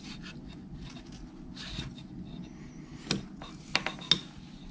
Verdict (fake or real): real